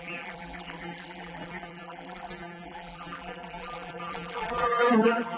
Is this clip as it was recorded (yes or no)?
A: no